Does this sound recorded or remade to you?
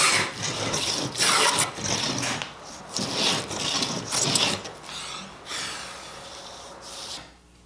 recorded